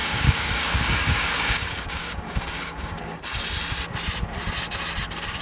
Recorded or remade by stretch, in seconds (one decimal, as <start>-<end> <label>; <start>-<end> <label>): 0.0-3.2 remade; 3.2-5.4 recorded